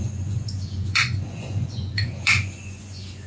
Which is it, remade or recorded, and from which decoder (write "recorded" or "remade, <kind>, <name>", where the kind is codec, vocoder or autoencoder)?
remade, vocoder, Vocos